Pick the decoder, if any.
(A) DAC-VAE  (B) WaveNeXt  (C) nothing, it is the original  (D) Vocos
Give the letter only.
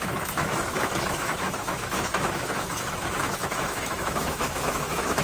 A